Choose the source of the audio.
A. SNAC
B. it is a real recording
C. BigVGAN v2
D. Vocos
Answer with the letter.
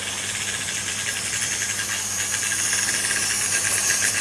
B